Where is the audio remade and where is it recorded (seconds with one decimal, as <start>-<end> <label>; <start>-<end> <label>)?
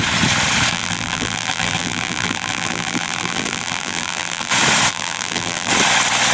0.0-0.7 recorded; 0.7-4.5 remade; 4.5-4.9 recorded; 4.9-5.7 remade; 5.7-6.3 recorded